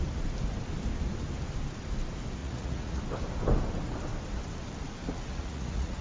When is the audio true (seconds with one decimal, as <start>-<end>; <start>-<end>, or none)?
0.0-2.4; 3.0-5.0